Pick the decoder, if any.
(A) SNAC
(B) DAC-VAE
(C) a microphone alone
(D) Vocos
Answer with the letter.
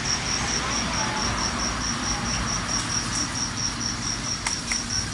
C